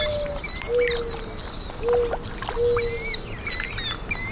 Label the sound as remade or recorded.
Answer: recorded